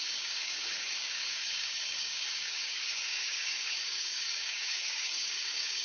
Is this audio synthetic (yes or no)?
yes